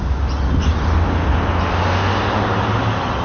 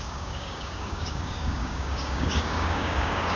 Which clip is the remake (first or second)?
second